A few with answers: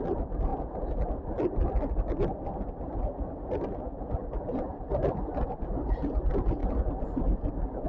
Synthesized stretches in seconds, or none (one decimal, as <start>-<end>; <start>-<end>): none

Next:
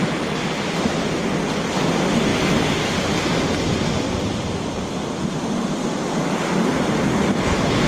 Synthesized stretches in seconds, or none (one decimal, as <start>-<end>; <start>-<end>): none

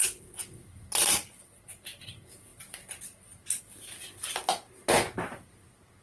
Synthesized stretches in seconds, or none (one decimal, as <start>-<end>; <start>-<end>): none